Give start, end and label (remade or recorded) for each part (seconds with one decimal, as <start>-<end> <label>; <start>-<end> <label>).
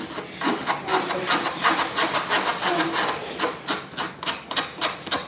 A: 0.0-5.3 recorded